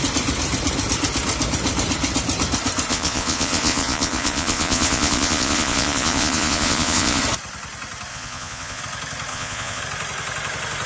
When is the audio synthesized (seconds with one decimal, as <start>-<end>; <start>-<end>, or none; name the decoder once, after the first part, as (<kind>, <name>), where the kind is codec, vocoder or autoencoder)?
2.9-7.2 (vocoder, Vocos); 8.1-8.8; 9.3-9.8